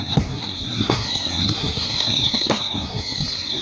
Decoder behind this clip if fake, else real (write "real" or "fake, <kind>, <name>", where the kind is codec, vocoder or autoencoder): fake, codec, SNAC